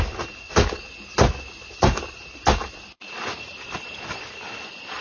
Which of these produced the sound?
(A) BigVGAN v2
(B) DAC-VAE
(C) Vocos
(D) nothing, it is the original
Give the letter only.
D